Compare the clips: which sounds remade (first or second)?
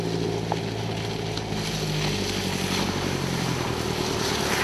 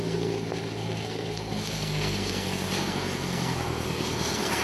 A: second